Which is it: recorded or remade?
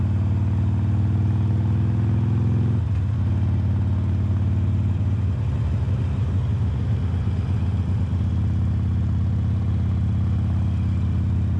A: recorded